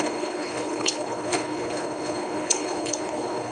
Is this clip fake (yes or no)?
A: yes